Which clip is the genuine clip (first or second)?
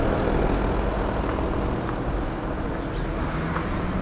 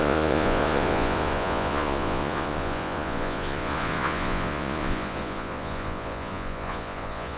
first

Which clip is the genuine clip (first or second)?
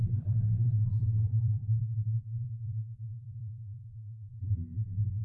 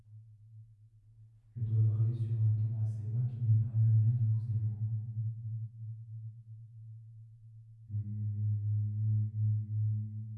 second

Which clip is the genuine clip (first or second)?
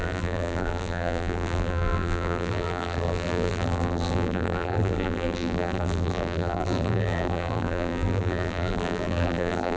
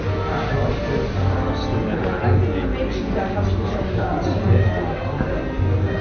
second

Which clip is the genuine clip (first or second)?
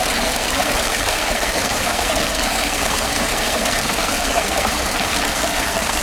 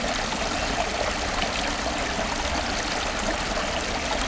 second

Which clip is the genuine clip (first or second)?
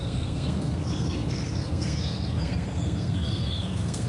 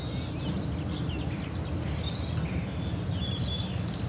second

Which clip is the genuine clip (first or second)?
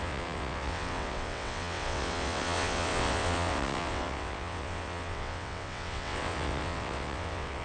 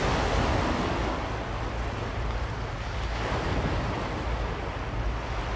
second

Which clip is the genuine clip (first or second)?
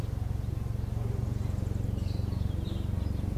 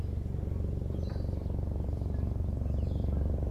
first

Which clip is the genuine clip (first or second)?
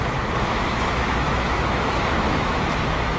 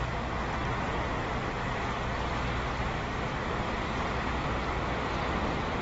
second